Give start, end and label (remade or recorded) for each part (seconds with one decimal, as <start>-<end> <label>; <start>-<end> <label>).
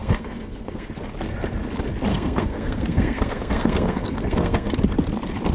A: 0.0-0.9 remade; 0.9-2.1 recorded; 2.1-4.7 remade; 4.7-5.5 recorded